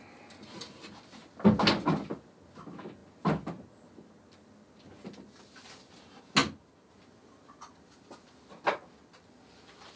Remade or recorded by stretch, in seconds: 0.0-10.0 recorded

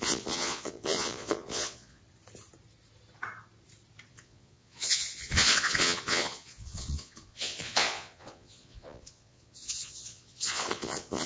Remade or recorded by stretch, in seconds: 0.0-2.0 remade; 2.0-4.1 recorded; 4.1-11.3 remade

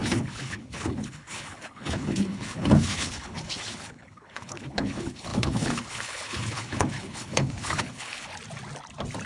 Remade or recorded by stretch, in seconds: 0.0-8.3 remade; 8.3-9.3 recorded

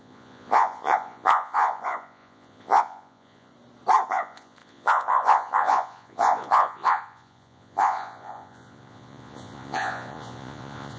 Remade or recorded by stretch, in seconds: 0.0-3.5 remade; 3.5-4.1 recorded; 4.1-11.0 remade

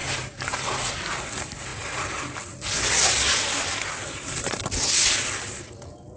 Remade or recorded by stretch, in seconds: 0.0-6.2 recorded